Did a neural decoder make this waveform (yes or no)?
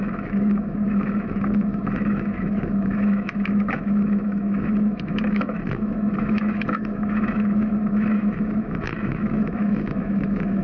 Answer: yes